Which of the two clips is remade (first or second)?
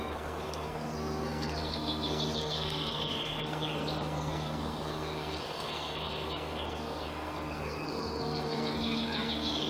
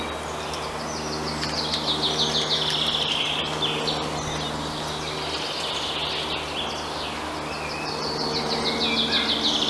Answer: first